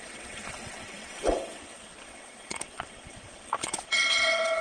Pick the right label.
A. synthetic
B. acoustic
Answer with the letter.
A